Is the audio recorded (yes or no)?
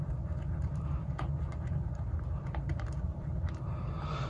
no